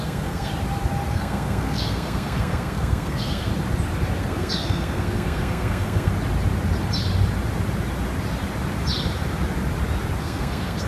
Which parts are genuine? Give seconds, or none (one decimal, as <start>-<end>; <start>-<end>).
0.5-1.1; 3.5-4.2; 6.1-10.2